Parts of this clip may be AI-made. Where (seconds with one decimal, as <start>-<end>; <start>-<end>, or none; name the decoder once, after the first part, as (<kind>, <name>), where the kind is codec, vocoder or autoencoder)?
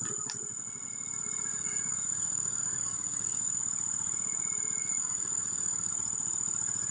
1.5-3.6 (codec, DAC); 4.8-5.9